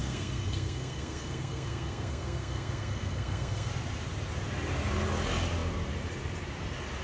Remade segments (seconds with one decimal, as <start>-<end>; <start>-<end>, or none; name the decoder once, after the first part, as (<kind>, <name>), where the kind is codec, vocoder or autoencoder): 0.0-3.7 (codec, SNAC)